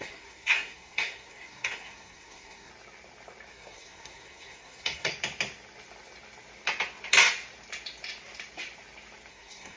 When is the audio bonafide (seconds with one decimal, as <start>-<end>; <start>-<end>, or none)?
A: 2.7-3.5; 5.1-9.3